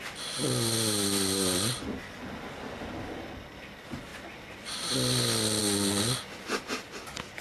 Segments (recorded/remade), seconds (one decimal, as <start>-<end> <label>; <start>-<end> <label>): 0.0-7.4 recorded